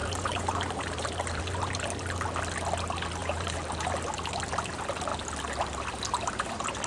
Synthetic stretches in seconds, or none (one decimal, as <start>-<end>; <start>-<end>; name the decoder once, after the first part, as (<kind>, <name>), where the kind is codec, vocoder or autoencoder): 0.0-1.4 (vocoder, BigVGAN v2); 3.2-3.9